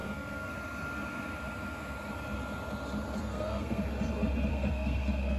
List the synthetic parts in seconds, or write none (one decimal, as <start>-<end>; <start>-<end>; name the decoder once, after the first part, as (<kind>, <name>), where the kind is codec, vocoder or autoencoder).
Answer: 0.0-0.5 (codec, SNAC); 3.2-3.8; 4.5-5.4